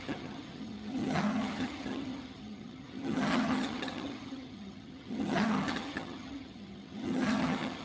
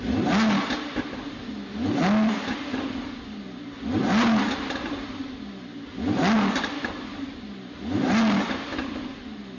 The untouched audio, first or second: second